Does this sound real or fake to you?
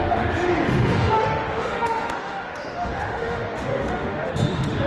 fake